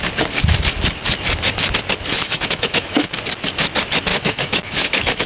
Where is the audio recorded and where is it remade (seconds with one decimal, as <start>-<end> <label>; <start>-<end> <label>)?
0.0-2.1 recorded; 2.1-3.1 remade; 3.1-4.1 recorded; 4.1-5.3 remade